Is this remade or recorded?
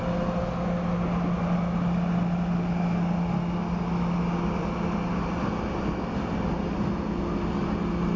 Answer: recorded